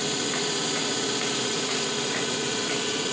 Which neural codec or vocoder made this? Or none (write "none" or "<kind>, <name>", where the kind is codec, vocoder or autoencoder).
vocoder, Vocos